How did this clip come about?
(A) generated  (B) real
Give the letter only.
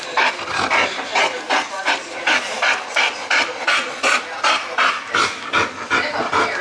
B